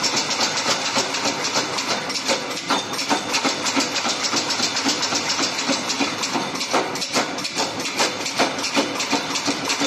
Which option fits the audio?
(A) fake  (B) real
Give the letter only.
B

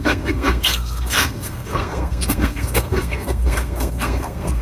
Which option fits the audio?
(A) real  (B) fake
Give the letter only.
B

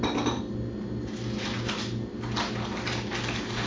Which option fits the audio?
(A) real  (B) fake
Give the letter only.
A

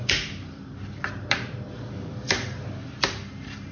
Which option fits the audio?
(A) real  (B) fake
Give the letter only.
B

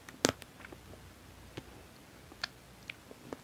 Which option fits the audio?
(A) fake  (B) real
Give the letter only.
B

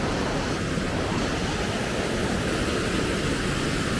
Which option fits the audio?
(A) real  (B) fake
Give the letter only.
A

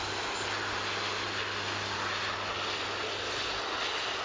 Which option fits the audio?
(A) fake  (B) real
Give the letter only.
B